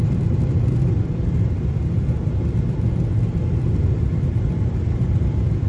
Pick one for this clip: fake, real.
fake